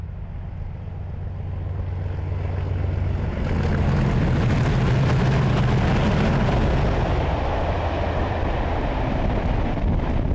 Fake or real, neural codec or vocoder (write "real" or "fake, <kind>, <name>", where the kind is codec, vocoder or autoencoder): real